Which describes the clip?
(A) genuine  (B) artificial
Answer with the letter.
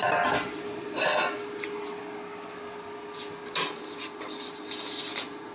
A